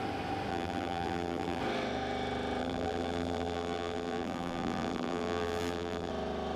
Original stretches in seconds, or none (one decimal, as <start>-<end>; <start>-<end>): 0.0-0.5; 1.6-2.6; 6.1-6.6